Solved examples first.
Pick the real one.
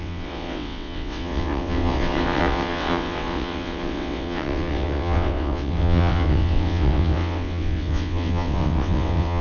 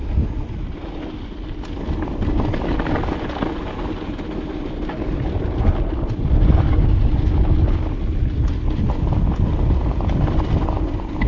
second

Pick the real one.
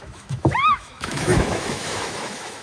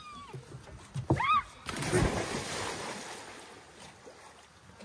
second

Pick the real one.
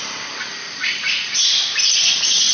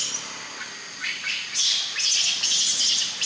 second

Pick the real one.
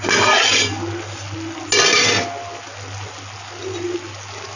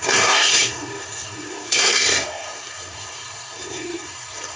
first